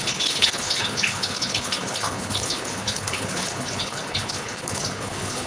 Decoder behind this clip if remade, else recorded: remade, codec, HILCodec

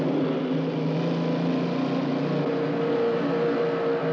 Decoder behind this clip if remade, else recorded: recorded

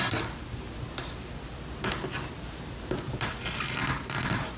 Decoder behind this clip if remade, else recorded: recorded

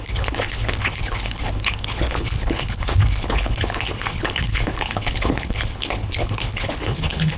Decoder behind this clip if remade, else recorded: remade, codec, HILCodec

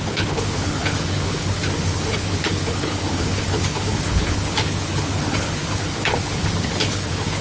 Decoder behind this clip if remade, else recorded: remade, codec, HILCodec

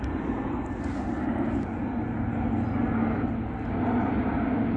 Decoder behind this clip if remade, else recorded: recorded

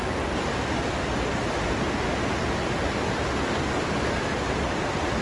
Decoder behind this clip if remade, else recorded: recorded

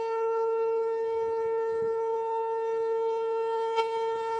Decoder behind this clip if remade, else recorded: remade, codec, HILCodec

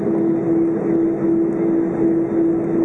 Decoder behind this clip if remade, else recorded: recorded